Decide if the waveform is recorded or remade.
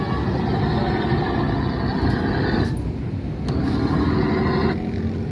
recorded